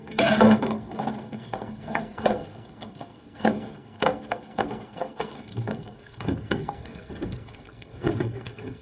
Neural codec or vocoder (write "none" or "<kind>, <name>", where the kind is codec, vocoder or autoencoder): codec, SNAC